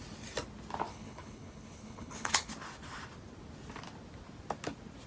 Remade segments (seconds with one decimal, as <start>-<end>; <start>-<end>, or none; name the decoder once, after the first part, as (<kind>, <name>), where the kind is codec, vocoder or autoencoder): 0.9-2.5 (codec, HILCodec)